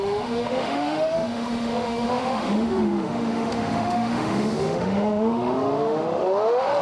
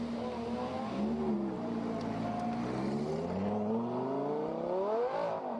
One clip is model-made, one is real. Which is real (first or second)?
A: second